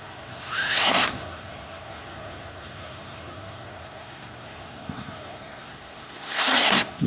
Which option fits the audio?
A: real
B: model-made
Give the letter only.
B